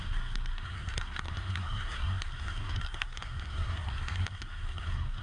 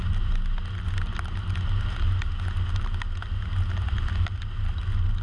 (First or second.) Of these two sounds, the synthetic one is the first